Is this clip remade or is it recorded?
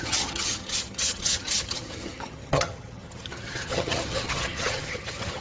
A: remade